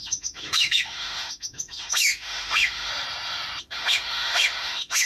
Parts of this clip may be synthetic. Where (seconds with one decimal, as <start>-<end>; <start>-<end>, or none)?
0.0-2.9; 3.6-5.1